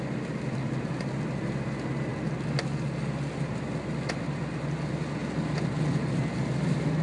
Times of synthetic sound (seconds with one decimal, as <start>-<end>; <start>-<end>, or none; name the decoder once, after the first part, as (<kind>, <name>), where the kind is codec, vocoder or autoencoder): none